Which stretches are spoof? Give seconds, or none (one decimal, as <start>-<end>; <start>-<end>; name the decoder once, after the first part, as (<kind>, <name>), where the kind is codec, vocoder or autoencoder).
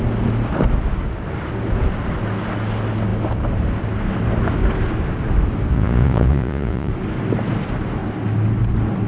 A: 5.7-6.9 (vocoder, Vocos)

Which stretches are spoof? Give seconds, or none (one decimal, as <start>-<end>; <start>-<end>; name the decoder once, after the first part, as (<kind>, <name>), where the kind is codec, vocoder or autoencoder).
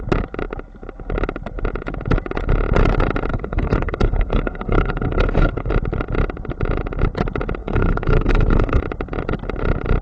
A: 3.3-5.7 (codec, SNAC); 7.6-8.8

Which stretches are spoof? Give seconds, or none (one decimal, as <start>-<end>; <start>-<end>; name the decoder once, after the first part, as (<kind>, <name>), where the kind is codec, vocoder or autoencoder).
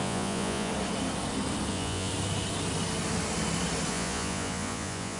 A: 0.0-0.7 (vocoder, Vocos); 1.7-2.1; 3.9-5.2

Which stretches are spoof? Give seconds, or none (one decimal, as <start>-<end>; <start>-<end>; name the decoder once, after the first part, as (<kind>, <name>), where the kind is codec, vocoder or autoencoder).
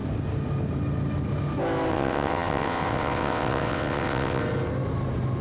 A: 1.9-4.4 (vocoder, WaveNeXt)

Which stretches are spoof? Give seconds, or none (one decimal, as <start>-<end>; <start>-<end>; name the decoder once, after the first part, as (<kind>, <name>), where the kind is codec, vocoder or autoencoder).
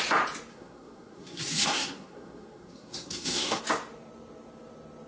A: 0.5-3.6 (codec, SNAC)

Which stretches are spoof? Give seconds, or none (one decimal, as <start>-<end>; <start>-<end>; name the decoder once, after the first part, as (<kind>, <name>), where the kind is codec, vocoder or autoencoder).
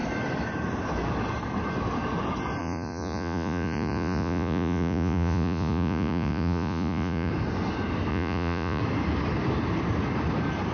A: 2.6-7.3 (vocoder, Vocos); 8.1-8.8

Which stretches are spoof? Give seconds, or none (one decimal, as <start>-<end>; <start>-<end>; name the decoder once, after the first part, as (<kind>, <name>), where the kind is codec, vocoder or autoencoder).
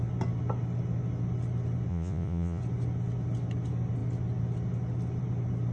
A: 1.9-2.6 (vocoder, Vocos)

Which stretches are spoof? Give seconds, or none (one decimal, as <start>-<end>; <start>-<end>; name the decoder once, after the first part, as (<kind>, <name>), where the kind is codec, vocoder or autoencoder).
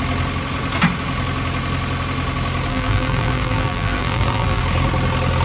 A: 2.7-4.6 (vocoder, BigVGAN v2)